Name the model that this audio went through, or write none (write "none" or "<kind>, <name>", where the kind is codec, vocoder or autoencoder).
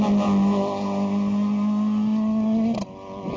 none